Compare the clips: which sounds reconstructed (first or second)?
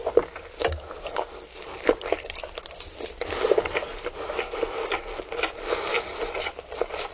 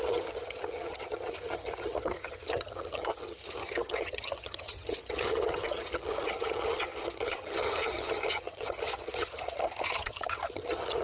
second